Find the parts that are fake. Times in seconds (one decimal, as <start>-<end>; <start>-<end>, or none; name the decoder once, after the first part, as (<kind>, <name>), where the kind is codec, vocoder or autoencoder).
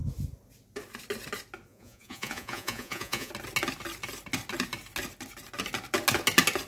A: 1.7-3.3 (vocoder, Vocos)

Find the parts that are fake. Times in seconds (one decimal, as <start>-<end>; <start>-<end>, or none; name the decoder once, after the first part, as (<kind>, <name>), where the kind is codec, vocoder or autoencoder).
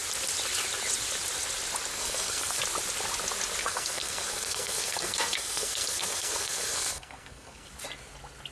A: 1.9-2.6 (codec, SNAC); 3.6-7.7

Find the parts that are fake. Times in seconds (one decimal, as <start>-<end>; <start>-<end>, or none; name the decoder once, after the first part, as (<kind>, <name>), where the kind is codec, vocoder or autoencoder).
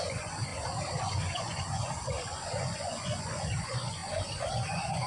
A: 0.0-0.5 (vocoder, Vocos); 1.0-5.1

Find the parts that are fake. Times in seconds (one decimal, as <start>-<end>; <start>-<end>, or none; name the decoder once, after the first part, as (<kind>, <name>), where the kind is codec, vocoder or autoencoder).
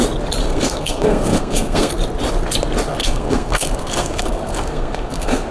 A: 0.4-1.9 (codec, SNAC); 3.0-5.5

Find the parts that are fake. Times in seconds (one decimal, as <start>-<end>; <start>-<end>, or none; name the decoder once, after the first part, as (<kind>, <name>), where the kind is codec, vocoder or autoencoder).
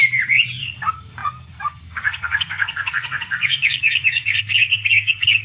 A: 0.6-5.4 (codec, SNAC)